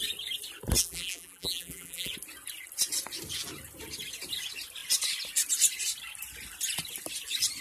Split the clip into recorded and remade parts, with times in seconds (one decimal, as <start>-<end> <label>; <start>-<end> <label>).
0.0-0.8 recorded; 0.8-2.1 remade; 2.1-7.6 recorded